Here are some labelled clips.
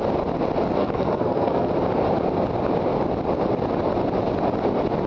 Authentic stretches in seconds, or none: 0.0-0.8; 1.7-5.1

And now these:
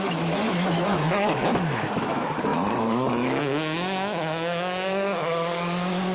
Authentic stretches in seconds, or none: none

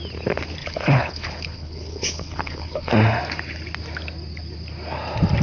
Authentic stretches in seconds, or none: 0.0-0.6; 2.9-5.4

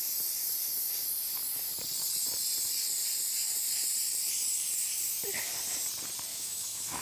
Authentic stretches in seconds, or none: 0.0-6.3

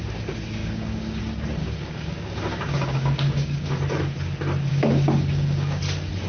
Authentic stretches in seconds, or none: 0.0-0.6; 1.2-1.6; 3.7-4.7; 5.8-6.3

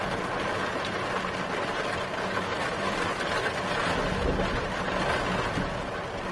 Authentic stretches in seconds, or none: 0.0-2.5; 3.1-6.3

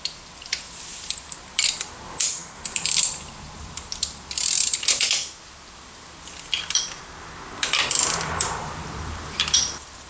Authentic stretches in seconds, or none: none